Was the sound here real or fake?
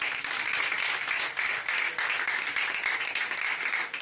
real